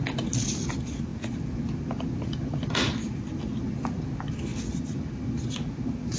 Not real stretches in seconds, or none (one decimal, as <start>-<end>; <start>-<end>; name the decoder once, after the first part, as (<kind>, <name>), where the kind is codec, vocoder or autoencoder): none